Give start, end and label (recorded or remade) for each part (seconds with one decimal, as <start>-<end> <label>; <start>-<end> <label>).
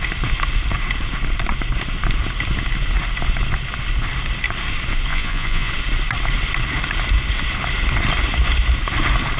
0.0-5.1 recorded; 5.1-5.7 remade; 5.7-9.4 recorded